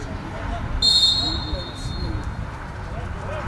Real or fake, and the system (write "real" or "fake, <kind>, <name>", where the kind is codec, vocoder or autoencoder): real